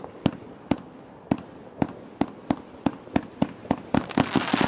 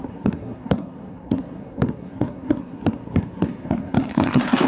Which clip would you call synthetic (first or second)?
second